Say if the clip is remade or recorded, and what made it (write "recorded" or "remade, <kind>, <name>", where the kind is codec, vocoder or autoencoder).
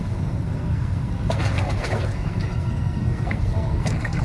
remade, codec, SNAC